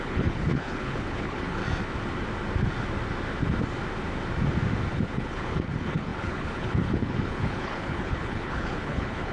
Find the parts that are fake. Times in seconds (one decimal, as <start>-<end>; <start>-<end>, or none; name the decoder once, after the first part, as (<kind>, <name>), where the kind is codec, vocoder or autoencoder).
0.0-1.6 (codec, HILCodec); 4.9-9.3